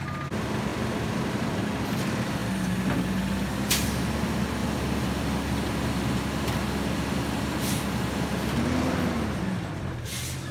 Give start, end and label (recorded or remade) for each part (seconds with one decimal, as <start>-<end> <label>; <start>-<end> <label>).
0.0-0.7 recorded; 0.7-1.5 remade; 1.5-10.5 recorded